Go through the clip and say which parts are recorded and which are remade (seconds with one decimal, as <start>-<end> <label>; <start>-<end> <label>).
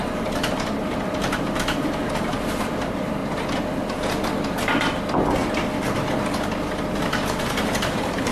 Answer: 0.0-3.2 remade; 3.2-7.4 recorded; 7.4-8.3 remade